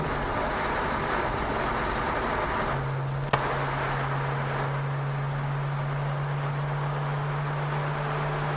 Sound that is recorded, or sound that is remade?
recorded